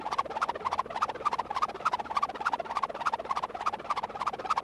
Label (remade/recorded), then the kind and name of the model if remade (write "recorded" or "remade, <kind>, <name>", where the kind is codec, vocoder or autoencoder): remade, vocoder, BigVGAN v2